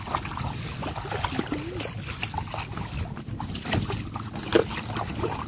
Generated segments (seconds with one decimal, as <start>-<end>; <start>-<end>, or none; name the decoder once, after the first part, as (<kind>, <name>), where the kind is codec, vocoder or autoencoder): none